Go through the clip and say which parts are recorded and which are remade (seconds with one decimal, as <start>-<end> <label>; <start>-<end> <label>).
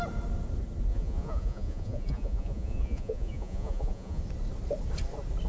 0.0-0.9 recorded; 0.9-4.2 remade; 4.2-5.5 recorded